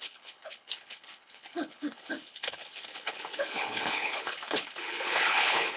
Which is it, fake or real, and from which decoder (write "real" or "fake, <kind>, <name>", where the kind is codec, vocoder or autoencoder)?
fake, codec, HILCodec